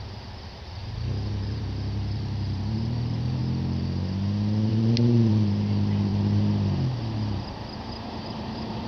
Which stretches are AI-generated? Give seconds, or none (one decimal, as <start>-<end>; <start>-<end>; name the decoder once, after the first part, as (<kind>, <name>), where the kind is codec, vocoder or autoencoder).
0.0-0.8 (vocoder, BigVGAN v2); 1.3-3.4; 4.7-6.1; 8.1-8.9